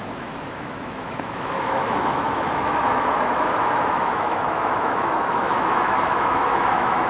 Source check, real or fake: fake